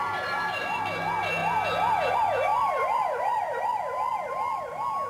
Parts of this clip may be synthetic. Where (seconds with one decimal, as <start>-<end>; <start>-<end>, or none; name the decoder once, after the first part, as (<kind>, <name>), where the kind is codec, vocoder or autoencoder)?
2.5-3.6 (vocoder, BigVGAN v2)